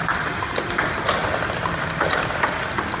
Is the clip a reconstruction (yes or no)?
no